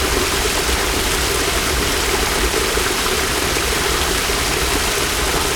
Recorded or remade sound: recorded